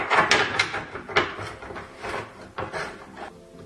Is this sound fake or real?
real